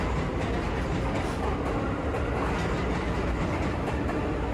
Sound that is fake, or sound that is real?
real